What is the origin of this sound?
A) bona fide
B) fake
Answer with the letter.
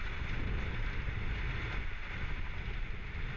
A